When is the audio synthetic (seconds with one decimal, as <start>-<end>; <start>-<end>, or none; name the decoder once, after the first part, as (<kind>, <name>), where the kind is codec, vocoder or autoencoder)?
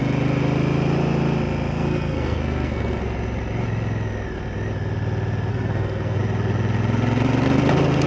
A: 1.7-3.0 (codec, SNAC); 5.5-6.2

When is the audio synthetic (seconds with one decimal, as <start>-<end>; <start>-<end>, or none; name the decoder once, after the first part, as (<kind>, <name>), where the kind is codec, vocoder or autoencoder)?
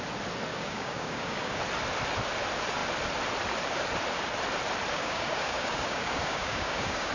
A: 0.5-1.6 (codec, DAC); 4.9-7.1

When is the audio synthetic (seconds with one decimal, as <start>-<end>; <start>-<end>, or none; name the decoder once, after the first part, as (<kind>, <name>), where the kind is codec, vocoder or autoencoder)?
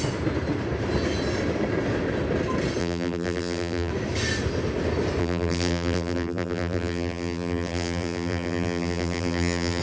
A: 2.8-3.9 (vocoder, BigVGAN v2); 5.2-9.8